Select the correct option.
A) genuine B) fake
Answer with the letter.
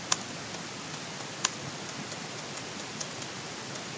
A